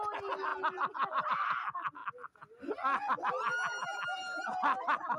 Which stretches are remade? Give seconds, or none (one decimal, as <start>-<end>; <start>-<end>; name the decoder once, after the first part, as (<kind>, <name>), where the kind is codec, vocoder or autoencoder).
none